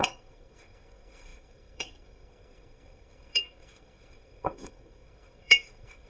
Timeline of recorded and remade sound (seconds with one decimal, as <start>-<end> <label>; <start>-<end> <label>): 0.0-6.1 remade